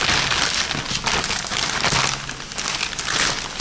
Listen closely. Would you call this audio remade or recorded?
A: recorded